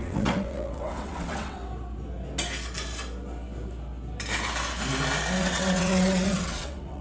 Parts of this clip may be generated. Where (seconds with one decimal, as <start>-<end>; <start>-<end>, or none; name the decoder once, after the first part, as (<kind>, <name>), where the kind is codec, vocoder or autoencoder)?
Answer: 0.0-1.6 (vocoder, WaveNeXt); 5.4-7.0